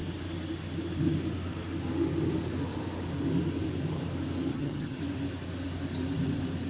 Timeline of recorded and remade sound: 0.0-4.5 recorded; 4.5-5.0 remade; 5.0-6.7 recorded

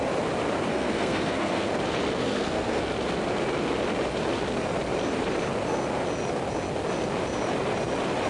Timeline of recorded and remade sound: 0.0-0.7 recorded; 0.7-1.7 remade; 1.7-2.2 recorded; 2.2-2.8 remade; 2.8-8.3 recorded